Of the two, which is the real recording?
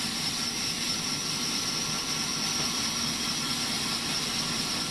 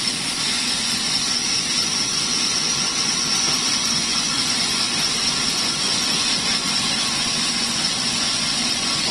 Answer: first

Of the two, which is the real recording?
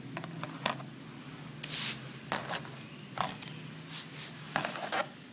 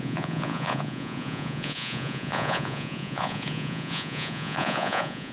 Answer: first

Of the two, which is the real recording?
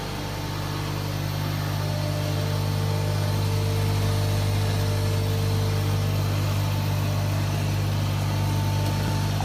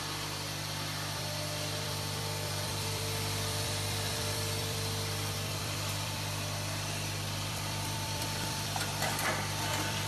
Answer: first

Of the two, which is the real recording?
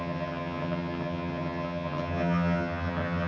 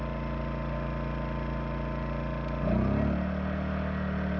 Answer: second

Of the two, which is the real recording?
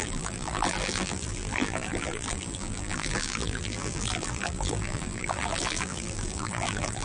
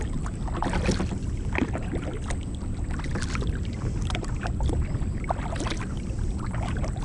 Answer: second